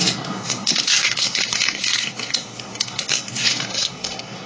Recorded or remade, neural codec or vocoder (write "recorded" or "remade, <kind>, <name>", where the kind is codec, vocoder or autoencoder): remade, codec, SNAC